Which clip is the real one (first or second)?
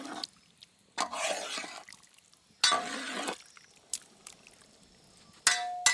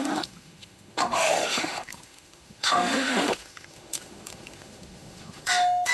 first